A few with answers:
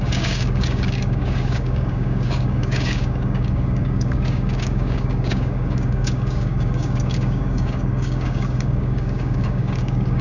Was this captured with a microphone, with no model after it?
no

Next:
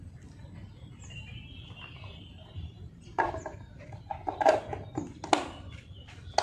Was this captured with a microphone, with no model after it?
yes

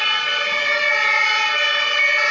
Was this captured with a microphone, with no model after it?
yes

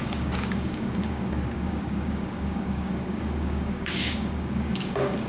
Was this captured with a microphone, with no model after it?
no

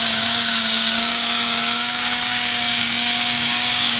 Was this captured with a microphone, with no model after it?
no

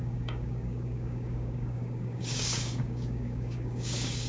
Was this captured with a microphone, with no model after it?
no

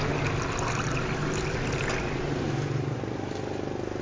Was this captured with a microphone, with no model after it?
yes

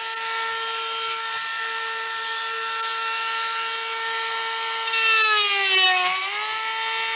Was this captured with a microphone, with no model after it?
yes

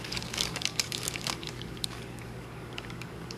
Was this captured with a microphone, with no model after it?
no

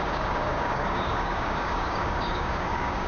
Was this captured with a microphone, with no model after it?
no